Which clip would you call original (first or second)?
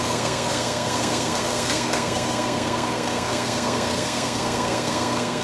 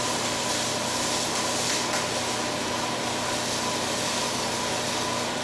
second